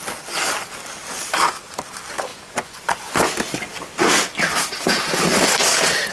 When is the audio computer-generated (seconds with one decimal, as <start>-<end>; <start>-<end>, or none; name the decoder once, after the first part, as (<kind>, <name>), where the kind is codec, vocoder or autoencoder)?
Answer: 2.3-3.1 (vocoder, Vocos)